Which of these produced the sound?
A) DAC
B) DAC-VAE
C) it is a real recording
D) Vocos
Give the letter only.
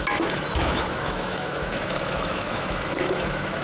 B